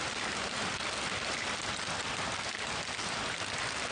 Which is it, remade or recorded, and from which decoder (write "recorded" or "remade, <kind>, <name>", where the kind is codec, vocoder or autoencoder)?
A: recorded